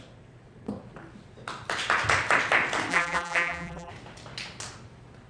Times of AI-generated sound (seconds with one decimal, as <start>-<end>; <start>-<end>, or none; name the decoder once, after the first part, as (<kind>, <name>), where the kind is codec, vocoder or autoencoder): 2.9-3.9 (vocoder, BigVGAN v2)